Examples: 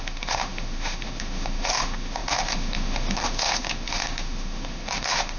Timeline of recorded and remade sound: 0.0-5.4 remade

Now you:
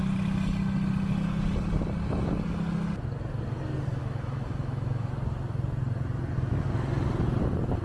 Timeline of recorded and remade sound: 0.0-3.9 recorded; 3.9-5.1 remade; 5.1-7.8 recorded

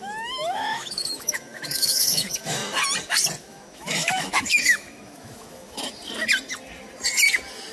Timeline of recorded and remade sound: 0.0-2.6 remade; 2.6-3.4 recorded; 3.4-5.8 remade; 5.8-7.7 recorded

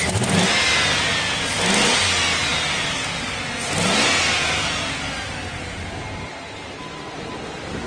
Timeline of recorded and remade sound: 0.0-7.9 recorded

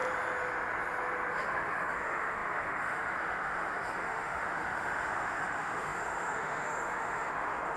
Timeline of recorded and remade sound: 0.0-1.3 recorded; 1.3-7.8 remade

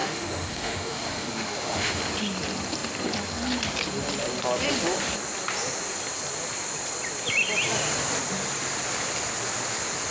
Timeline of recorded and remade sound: 0.0-2.0 remade; 2.0-10.1 recorded

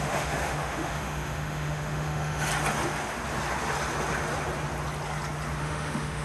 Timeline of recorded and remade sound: 0.0-2.5 remade; 2.5-5.6 recorded; 5.6-6.2 remade